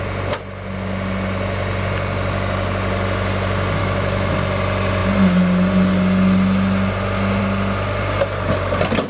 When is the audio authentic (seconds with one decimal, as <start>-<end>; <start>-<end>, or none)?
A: 0.0-3.8; 4.3-9.1